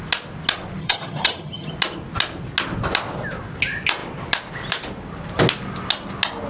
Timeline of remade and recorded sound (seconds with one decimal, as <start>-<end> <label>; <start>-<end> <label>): 0.0-0.8 recorded; 0.8-1.7 remade; 1.7-6.5 recorded